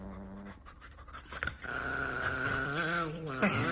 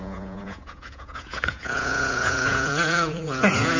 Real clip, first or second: first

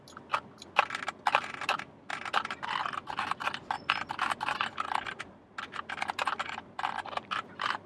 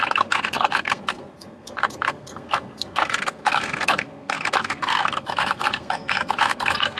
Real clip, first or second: first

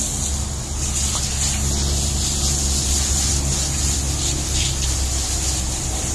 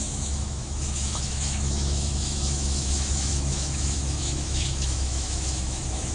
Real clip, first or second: first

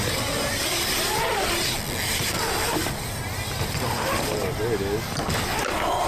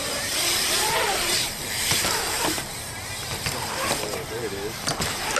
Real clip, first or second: first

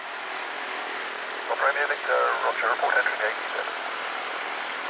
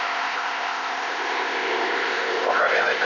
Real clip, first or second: first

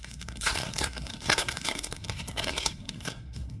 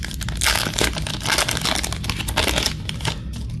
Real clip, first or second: second